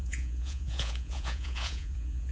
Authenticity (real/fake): fake